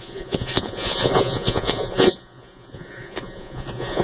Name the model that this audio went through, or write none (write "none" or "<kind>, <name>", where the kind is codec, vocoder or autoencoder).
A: vocoder, Vocos